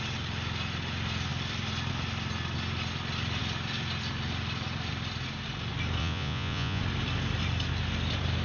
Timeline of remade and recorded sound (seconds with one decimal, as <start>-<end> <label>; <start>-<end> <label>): 0.0-6.0 recorded; 6.0-6.8 remade; 6.8-8.4 recorded